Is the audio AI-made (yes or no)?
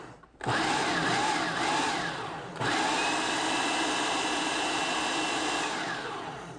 no